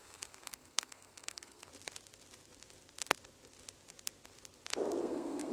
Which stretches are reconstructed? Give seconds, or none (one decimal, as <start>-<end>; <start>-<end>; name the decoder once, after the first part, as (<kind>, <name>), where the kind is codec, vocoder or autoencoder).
0.0-1.7 (codec, SNAC); 5.0-5.5

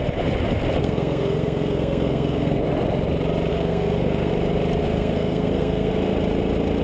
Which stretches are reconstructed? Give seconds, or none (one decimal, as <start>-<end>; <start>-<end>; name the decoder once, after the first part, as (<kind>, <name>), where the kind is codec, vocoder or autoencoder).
0.8-2.6 (codec, SNAC); 3.5-4.3; 4.8-5.9

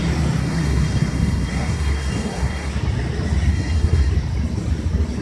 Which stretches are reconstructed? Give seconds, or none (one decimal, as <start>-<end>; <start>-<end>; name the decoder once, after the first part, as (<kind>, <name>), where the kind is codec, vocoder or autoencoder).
0.4-2.7 (codec, SNAC); 3.5-4.1